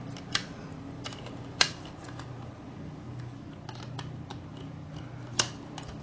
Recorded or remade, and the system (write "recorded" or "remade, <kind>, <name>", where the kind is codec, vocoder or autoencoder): recorded